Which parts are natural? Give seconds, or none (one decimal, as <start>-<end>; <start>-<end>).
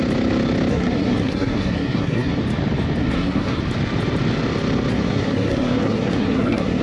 0.0-0.7; 2.4-3.0; 3.6-4.9